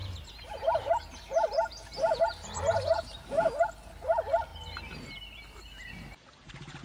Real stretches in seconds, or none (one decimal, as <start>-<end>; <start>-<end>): 2.2-4.5